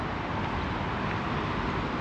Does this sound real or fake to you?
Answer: real